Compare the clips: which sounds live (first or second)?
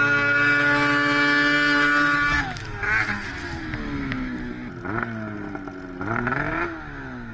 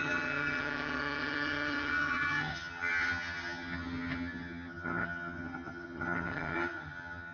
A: first